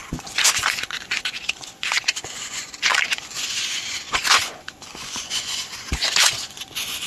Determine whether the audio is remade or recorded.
remade